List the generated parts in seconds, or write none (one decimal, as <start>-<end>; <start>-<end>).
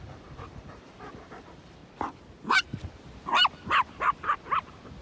0.0-1.8